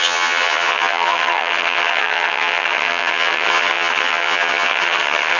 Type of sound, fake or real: fake